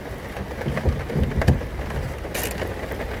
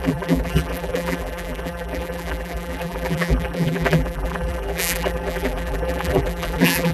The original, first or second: first